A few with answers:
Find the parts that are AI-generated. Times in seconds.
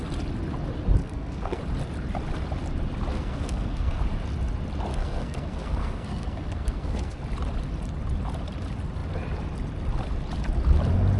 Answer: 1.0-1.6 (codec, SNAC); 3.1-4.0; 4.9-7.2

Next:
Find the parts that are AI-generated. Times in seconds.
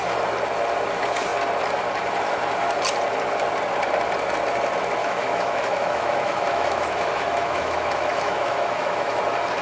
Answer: 5.0-9.2 (autoencoder, DAC-VAE)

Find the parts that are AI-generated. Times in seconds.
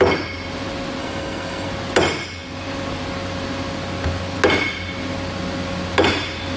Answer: 1.0-1.7 (codec, SNAC)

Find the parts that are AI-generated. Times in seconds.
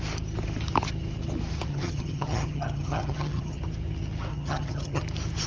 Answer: 1.7-3.6 (vocoder, HiFi-GAN); 4.3-5.0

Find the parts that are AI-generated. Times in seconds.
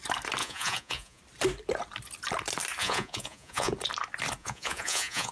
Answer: 0.4-1.2 (vocoder, Vocos); 2.8-3.7; 4.4-5.3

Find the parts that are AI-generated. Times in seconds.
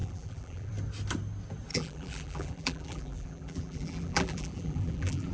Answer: 0.0-0.7 (vocoder, BigVGAN v2); 1.7-5.3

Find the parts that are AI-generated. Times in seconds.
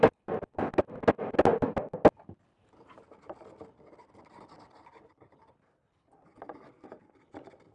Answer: none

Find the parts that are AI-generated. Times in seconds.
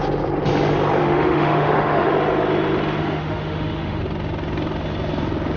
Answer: 1.0-2.1 (autoencoder, DAC-VAE); 3.0-4.0